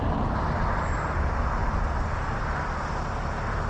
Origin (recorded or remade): recorded